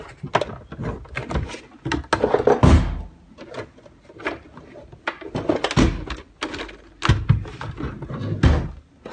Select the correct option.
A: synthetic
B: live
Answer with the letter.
B